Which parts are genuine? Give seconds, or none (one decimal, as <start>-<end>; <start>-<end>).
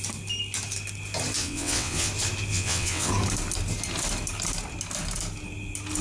0.0-1.4; 2.1-2.5; 3.1-6.0